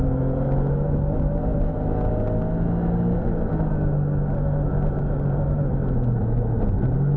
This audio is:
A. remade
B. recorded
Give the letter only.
B